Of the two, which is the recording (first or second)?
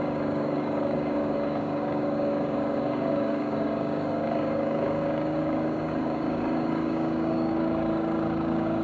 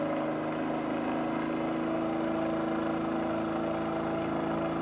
second